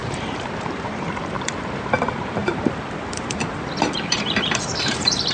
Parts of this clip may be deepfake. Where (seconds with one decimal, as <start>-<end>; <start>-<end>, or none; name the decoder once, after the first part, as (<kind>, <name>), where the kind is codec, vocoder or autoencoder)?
0.0-1.9 (vocoder, BigVGAN v2); 2.4-5.3

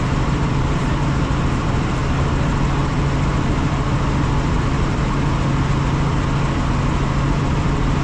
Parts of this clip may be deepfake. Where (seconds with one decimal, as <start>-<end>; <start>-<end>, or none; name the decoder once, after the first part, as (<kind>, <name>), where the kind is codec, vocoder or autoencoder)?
0.0-2.0 (vocoder, BigVGAN v2); 2.8-5.0; 7.3-8.0

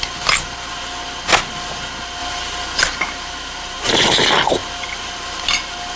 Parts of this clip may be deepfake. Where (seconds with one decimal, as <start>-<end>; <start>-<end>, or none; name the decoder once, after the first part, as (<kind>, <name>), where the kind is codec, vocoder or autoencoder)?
none